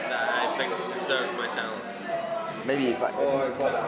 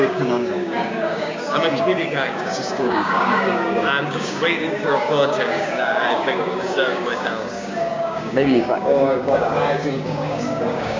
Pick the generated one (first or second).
second